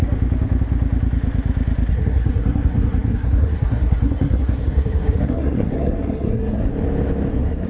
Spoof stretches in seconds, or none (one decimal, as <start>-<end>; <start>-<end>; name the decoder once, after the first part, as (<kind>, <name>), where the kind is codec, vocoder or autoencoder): 1.9-6.7 (codec, SNAC); 7.3-7.7